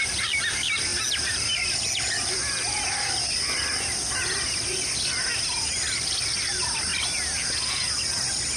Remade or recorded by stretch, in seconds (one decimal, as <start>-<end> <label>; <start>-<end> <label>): 0.0-8.6 recorded

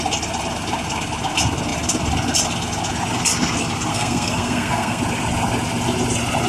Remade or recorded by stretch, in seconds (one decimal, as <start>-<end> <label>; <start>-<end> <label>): 0.0-3.9 recorded; 3.9-5.0 remade; 5.0-6.5 recorded